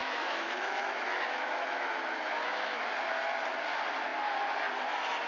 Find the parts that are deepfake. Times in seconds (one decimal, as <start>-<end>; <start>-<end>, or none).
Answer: 0.0-2.9